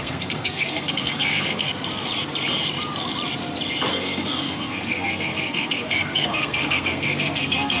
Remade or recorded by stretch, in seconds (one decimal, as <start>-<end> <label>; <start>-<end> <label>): 0.0-1.7 remade; 1.7-3.9 recorded; 3.9-7.8 remade